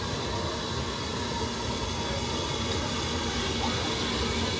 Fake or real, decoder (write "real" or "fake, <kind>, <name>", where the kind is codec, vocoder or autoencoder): real